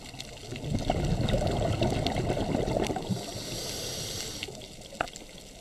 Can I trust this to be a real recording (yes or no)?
yes